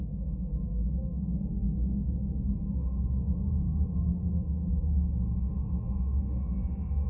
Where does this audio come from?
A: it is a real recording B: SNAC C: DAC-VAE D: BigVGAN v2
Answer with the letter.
C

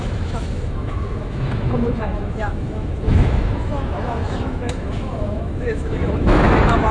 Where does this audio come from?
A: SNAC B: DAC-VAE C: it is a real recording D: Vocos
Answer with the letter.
B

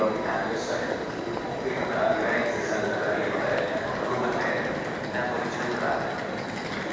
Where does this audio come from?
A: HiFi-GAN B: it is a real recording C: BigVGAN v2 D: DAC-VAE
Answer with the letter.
B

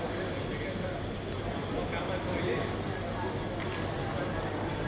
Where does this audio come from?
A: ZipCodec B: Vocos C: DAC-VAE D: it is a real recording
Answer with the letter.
D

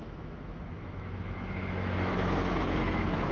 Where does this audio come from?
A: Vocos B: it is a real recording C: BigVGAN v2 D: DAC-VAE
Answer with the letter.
D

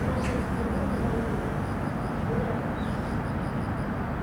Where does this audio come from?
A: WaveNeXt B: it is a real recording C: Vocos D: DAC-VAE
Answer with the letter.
B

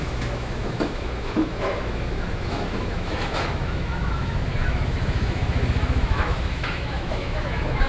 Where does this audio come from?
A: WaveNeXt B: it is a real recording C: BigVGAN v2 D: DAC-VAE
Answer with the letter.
D